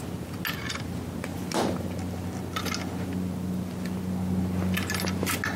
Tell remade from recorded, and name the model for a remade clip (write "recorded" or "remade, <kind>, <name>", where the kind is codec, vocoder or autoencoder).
recorded